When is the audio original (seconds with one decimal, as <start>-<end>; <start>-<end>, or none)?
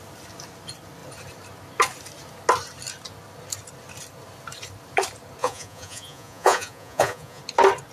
0.0-5.4; 7.4-7.9